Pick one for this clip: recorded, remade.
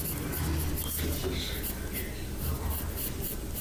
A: recorded